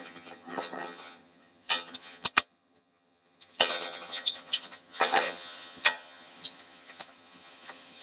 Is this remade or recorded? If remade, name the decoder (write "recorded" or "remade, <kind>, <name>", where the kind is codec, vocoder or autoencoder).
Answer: remade, vocoder, HiFi-GAN